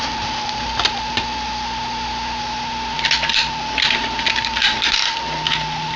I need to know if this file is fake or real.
real